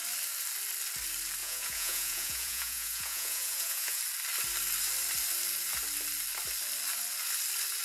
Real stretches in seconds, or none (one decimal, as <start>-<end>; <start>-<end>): 0.0-1.4; 4.0-7.8